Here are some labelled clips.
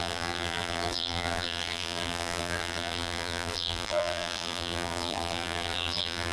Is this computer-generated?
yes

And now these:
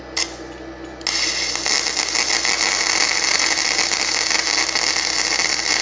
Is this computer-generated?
no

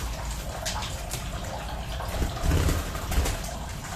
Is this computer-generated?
no